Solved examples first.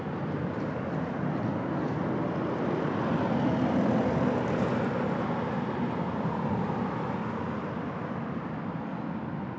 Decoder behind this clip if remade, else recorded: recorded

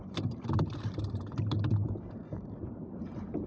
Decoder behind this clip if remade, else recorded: remade, vocoder, BigVGAN v2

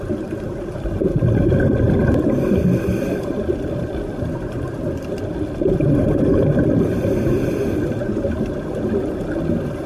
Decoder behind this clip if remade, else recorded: recorded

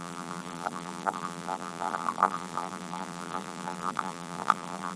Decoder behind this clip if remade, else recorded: remade, vocoder, BigVGAN v2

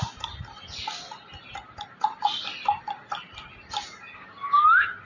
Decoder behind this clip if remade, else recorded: recorded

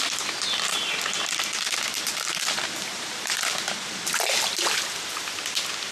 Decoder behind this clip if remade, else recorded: recorded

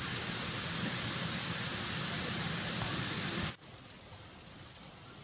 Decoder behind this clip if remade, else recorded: recorded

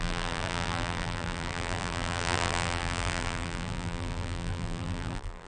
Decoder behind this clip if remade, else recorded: remade, vocoder, BigVGAN v2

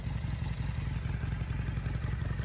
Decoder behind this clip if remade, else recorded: recorded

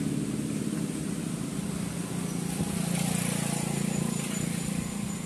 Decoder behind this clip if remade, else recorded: recorded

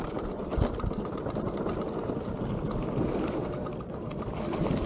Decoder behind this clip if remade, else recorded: recorded